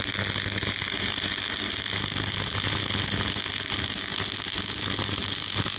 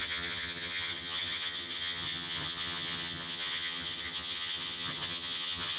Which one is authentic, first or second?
first